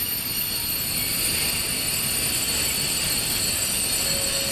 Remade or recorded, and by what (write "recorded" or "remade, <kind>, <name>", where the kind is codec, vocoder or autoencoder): recorded